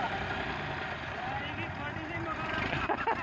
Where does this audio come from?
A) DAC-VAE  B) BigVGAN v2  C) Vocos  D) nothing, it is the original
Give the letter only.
D